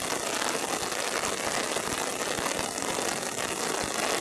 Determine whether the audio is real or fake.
real